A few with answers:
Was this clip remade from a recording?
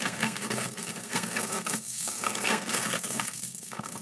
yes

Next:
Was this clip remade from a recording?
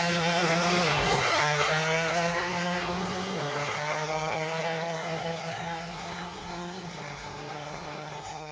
yes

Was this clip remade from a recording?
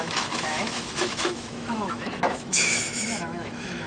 yes